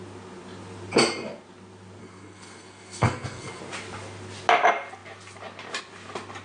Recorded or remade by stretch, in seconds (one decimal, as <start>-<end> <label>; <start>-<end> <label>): 0.0-2.0 recorded; 2.0-3.6 remade; 3.6-6.4 recorded

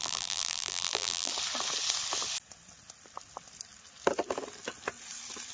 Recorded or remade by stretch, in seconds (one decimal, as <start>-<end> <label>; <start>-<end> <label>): 0.0-1.3 remade; 1.3-5.5 recorded

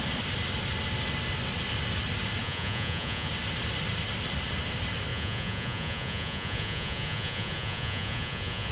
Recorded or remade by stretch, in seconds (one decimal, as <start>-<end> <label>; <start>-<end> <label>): 0.0-2.4 recorded; 2.4-3.3 remade; 3.3-5.1 recorded; 5.1-8.7 remade

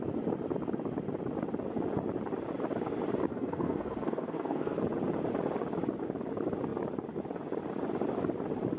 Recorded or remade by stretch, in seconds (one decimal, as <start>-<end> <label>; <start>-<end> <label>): 0.0-3.3 recorded; 3.3-4.8 remade; 4.8-8.8 recorded